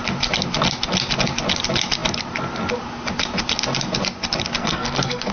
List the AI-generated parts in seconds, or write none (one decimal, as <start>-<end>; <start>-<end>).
4.6-5.3